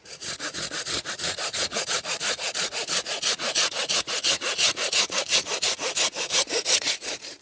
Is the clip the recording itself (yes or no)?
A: no